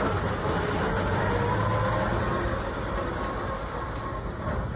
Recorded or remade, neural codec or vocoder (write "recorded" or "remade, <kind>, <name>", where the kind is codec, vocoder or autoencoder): recorded